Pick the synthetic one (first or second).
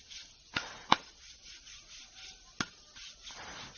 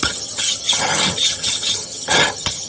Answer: second